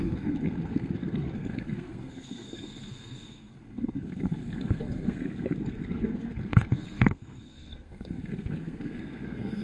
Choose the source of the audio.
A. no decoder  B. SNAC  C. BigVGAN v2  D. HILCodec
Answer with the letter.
B